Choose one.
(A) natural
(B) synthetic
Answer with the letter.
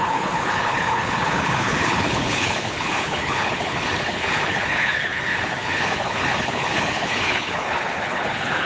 B